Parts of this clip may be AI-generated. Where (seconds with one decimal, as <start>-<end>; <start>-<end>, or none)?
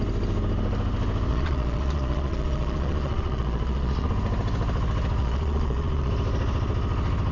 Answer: 1.3-4.1; 5.2-6.1